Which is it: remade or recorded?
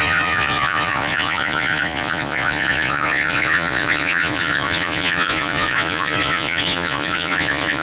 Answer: remade